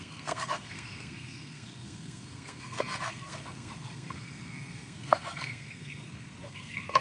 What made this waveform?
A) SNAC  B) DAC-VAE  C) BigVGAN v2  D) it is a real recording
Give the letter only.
A